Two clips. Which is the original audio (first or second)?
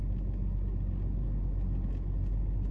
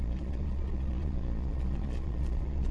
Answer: first